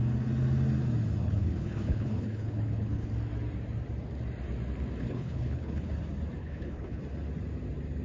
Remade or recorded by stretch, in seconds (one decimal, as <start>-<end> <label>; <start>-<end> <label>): 0.0-1.2 recorded; 1.2-3.1 remade; 3.1-5.0 recorded; 5.0-5.9 remade; 5.9-6.4 recorded; 6.4-7.0 remade; 7.0-8.0 recorded